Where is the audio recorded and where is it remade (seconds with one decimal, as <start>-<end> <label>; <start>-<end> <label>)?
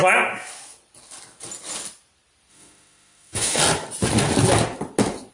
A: 0.0-2.5 recorded; 2.5-3.6 remade; 3.6-5.3 recorded